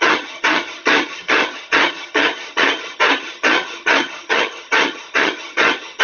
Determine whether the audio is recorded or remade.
remade